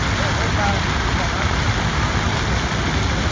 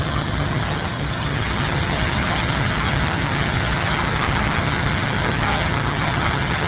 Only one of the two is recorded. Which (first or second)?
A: first